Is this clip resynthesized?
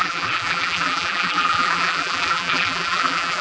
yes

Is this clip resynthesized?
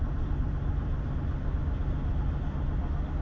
no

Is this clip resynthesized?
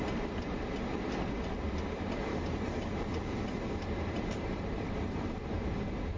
yes